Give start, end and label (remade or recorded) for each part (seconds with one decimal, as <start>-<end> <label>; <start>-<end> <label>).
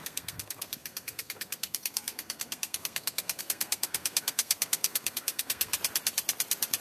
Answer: 0.0-5.7 remade; 5.7-6.8 recorded